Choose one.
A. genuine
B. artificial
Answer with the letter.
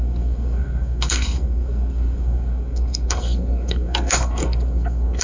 B